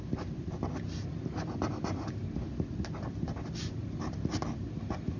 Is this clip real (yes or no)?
yes